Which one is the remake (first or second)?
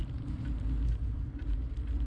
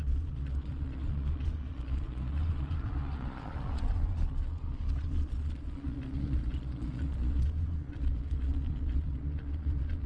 second